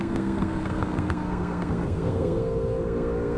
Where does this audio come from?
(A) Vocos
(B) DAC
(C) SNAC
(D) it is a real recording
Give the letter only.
C